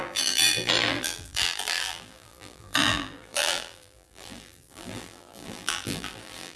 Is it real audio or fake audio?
fake